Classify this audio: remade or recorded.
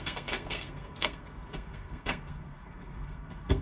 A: remade